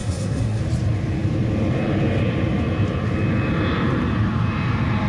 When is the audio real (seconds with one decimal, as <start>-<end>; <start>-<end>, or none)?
0.6-5.1